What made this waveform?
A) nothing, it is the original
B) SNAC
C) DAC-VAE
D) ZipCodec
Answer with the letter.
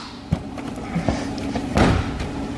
A